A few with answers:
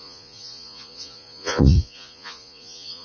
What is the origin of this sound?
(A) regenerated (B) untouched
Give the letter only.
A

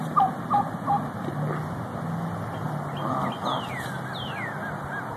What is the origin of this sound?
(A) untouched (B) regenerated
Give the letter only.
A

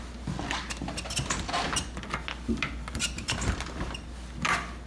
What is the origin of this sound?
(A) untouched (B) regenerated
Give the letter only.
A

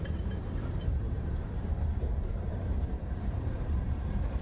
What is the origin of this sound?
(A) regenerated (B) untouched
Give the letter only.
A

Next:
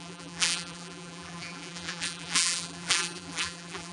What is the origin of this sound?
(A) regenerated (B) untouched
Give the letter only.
A